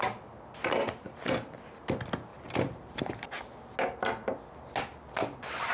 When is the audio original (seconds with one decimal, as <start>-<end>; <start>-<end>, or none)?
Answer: 0.0-2.3; 3.0-5.7